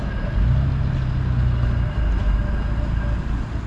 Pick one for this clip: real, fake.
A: real